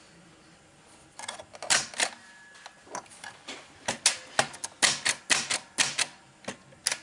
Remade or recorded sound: recorded